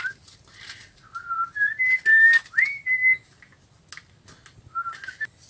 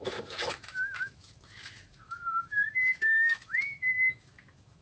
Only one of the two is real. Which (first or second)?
first